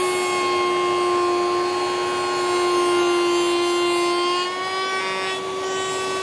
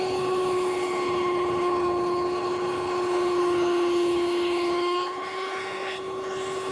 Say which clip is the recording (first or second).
first